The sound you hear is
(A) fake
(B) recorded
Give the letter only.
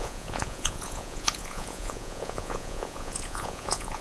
A